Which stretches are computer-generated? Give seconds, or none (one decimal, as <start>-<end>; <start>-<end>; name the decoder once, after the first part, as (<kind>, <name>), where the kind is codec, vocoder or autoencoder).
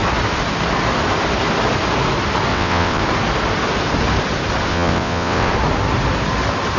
2.5-3.0 (vocoder, WaveNeXt); 4.7-5.5